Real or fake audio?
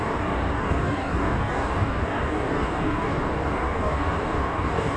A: fake